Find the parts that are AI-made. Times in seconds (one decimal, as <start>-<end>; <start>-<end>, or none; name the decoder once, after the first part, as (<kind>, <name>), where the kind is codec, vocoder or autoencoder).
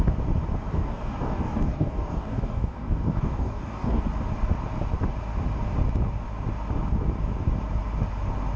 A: 0.7-4.0 (codec, DAC)